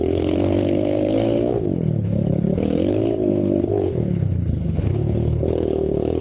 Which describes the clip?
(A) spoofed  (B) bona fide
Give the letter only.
A